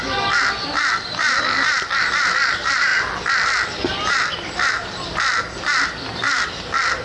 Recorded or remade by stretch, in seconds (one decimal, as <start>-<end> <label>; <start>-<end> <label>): 0.0-7.0 remade